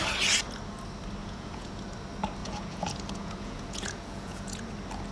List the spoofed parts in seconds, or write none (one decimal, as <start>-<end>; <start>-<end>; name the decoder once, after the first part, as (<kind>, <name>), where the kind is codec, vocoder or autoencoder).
1.2-1.7 (vocoder, Vocos); 2.4-4.6